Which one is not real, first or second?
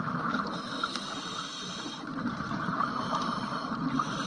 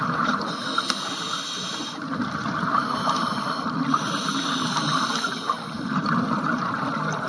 first